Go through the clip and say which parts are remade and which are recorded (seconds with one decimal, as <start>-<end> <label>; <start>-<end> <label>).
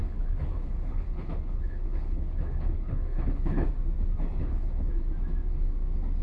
0.0-3.7 remade; 3.7-4.4 recorded; 4.4-4.9 remade; 4.9-6.2 recorded